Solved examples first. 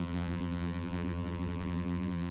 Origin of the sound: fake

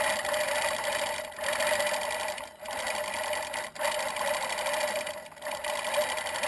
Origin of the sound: real